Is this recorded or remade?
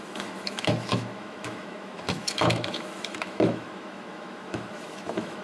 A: remade